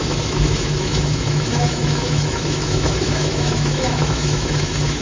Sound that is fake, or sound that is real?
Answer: fake